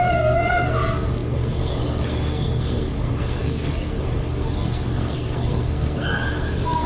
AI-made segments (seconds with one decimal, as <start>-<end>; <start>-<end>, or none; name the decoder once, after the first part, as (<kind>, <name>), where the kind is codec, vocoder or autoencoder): 0.0-6.9 (codec, SNAC)